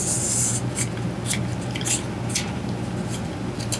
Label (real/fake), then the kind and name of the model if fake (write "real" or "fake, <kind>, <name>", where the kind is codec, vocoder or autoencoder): real